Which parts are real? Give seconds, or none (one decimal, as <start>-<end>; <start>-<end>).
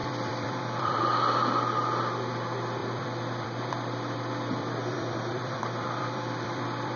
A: 1.0-2.8